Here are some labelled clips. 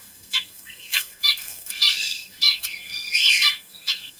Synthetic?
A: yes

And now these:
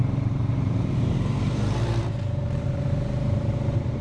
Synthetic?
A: yes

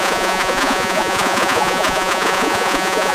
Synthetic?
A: yes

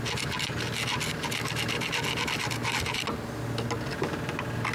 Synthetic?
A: no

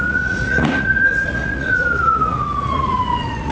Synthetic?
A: yes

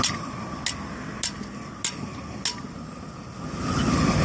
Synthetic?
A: no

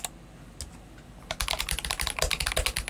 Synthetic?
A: no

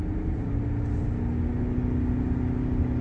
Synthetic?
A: no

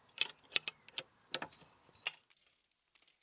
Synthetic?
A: no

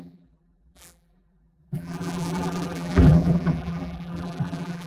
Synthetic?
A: yes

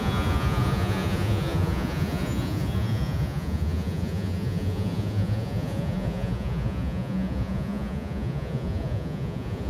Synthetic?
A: yes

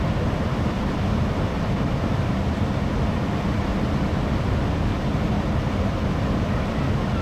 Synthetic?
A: no